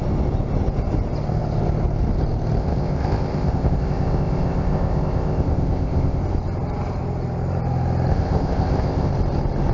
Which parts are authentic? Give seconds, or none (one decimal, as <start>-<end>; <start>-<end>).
0.0-2.6; 6.2-8.1; 9.1-9.7